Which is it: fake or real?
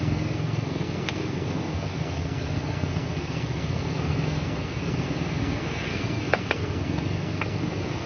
fake